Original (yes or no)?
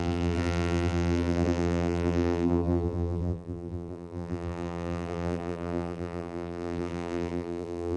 no